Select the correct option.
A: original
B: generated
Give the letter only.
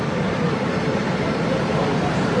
B